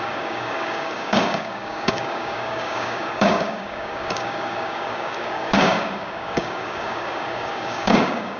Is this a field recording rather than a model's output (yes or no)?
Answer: no